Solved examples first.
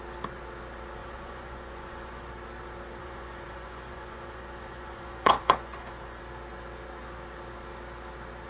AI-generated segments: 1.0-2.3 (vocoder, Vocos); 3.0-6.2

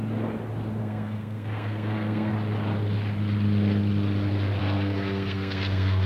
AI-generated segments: 0.8-2.3 (codec, SNAC); 4.6-6.1